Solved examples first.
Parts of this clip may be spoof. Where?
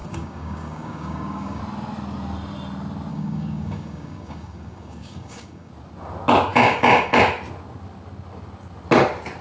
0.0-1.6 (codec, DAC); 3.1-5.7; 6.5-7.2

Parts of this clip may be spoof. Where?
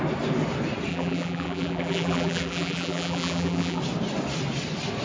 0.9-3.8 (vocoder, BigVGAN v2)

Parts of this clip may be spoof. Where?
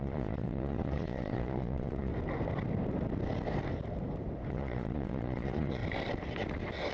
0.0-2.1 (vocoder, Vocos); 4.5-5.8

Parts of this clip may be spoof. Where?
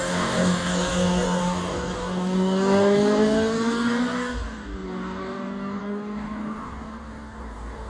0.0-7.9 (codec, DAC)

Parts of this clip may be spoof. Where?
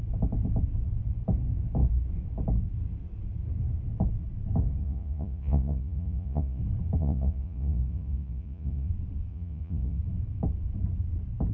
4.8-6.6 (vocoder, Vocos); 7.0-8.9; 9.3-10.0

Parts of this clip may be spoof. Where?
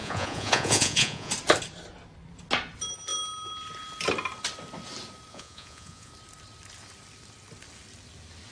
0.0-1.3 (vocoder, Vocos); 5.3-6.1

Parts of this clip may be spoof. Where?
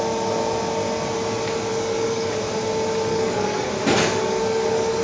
1.7-2.3 (codec, DAC); 3.1-3.7; 4.2-5.0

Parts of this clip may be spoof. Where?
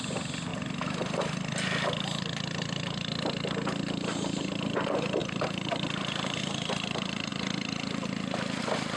5.2-6.4 (vocoder, BigVGAN v2)